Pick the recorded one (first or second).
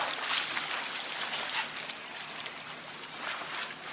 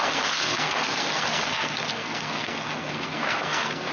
first